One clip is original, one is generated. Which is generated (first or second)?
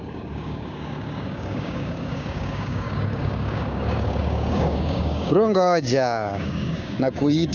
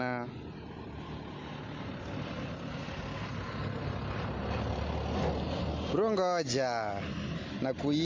first